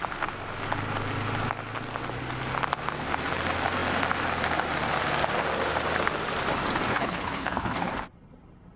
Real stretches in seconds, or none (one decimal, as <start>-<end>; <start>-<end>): 0.0-6.9; 7.9-8.8